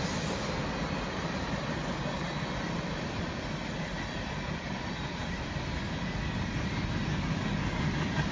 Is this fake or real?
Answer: real